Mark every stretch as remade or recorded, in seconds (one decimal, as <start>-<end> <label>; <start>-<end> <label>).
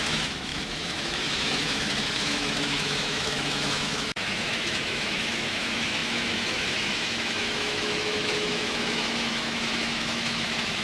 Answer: 0.0-10.8 remade